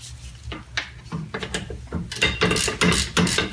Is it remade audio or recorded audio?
recorded